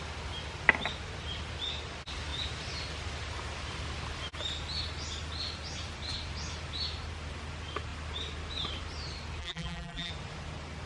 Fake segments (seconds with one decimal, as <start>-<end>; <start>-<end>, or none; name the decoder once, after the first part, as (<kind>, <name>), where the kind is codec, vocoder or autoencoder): 9.4-10.1 (vocoder, BigVGAN v2)